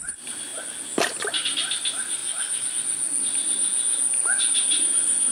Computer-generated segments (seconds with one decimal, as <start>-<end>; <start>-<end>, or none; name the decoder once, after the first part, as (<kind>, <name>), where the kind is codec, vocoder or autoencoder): 0.0-0.5 (vocoder, BigVGAN v2); 1.1-2.2; 3.2-3.7; 4.5-5.3